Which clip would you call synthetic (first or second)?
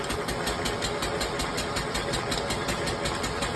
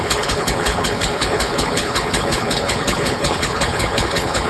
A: second